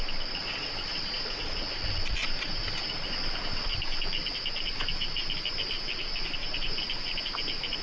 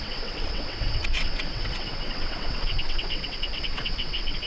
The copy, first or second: second